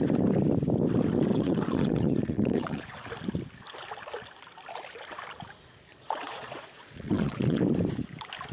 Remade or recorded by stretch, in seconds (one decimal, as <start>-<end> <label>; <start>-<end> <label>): 0.0-1.3 recorded; 1.3-3.1 remade; 3.1-5.9 recorded; 5.9-7.6 remade; 7.6-8.5 recorded